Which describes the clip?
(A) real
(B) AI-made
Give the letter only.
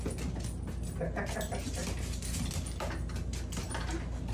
A